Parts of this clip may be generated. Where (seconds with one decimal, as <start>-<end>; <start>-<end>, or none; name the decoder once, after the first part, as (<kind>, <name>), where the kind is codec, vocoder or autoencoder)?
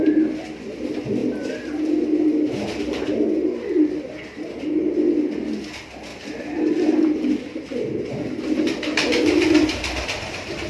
6.1-7.2 (vocoder, BigVGAN v2)